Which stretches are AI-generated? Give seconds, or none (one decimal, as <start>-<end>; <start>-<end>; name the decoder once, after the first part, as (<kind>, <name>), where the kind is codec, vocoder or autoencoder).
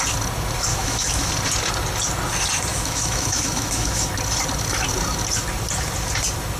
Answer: 0.7-1.3 (autoencoder, DAC-VAE); 2.7-4.1